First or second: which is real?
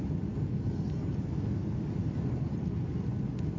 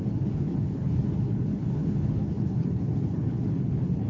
first